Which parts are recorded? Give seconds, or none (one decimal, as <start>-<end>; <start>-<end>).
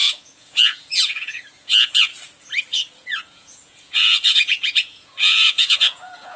2.1-2.9